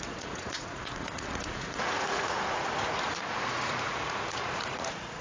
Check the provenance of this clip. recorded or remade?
remade